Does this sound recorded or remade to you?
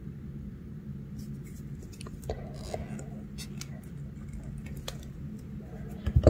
recorded